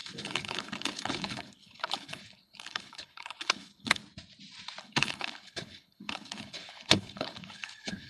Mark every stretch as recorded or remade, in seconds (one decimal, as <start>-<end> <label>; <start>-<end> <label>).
0.0-4.0 remade; 4.0-4.8 recorded; 4.8-8.1 remade